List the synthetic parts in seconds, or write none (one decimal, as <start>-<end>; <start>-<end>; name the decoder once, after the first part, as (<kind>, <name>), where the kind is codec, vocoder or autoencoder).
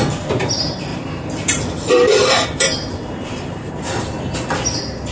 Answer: 0.9-3.7 (vocoder, BigVGAN v2)